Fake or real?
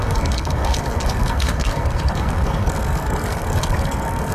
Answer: fake